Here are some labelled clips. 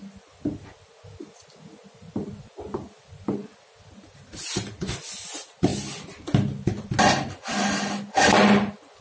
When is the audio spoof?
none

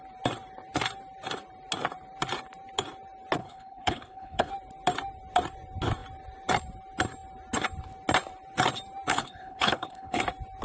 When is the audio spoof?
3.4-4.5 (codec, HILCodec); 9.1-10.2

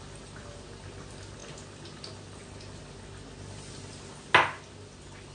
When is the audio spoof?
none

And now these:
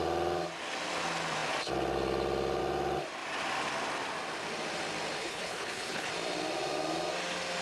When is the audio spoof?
5.2-6.1 (codec, HILCodec)

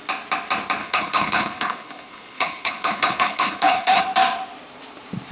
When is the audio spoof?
0.8-4.0 (codec, HILCodec)

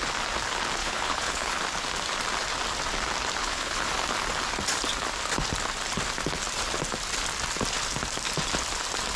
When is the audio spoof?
0.8-1.6 (codec, HILCodec); 3.4-3.9

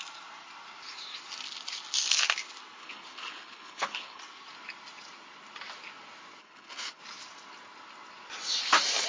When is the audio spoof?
2.8-4.2 (codec, HILCodec); 6.4-7.0

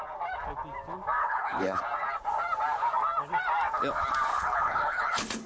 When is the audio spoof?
1.2-1.8 (codec, HILCodec); 4.3-5.5